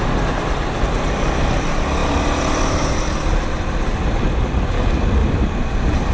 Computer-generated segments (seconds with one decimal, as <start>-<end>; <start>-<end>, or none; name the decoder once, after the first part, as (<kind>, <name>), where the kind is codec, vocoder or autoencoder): none